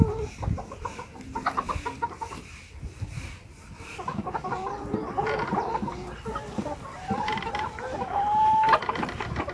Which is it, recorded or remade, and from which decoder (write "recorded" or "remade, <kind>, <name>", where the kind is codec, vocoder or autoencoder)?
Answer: remade, vocoder, BigVGAN v2